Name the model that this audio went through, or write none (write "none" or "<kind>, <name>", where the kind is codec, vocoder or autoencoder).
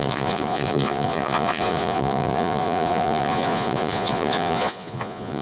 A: vocoder, Vocos